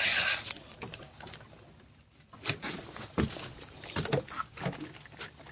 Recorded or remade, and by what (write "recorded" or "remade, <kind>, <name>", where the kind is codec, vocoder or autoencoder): recorded